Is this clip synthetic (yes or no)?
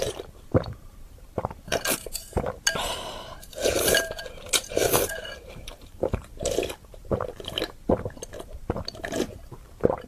yes